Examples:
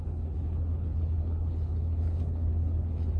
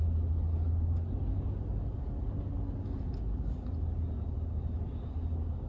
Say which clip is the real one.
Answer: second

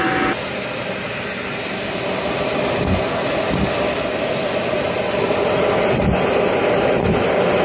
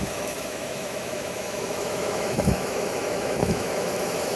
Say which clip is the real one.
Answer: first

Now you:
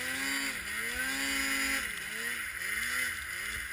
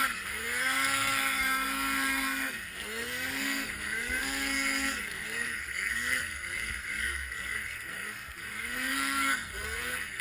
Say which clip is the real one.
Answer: first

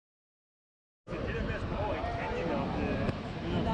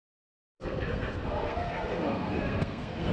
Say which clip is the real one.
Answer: first